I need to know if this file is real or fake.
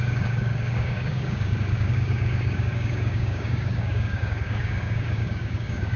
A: fake